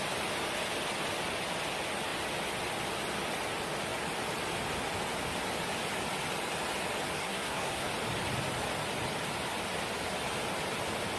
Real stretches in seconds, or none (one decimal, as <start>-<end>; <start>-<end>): 0.0-7.2; 7.9-11.2